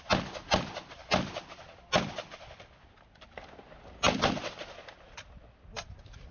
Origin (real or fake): real